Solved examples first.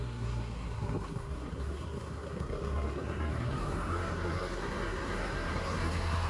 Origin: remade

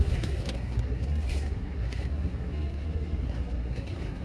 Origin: remade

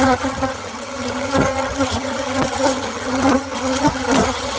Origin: remade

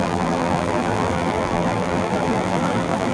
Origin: remade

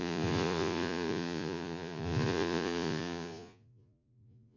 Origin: remade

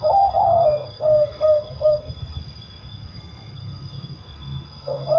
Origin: remade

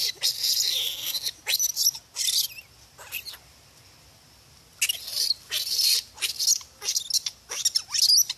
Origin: recorded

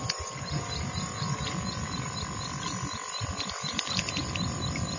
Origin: recorded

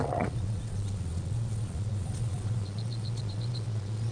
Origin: remade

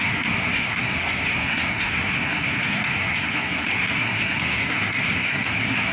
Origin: remade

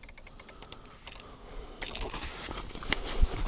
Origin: recorded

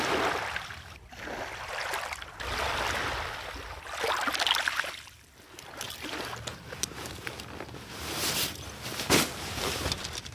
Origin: recorded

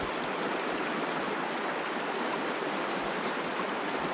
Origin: recorded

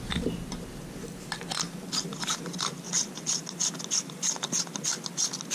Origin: recorded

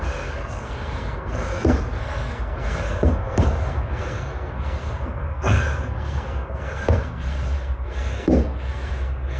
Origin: remade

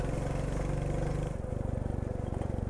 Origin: recorded